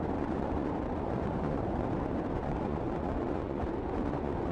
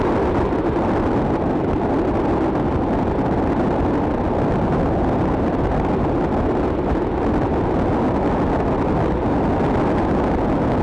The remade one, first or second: first